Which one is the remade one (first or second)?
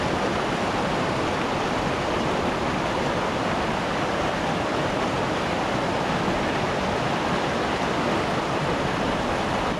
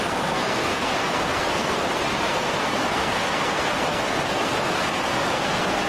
second